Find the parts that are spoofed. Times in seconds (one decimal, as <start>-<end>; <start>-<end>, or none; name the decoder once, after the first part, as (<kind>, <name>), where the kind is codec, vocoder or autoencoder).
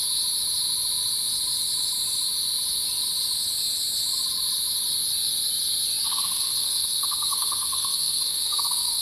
6.0-9.0 (codec, SNAC)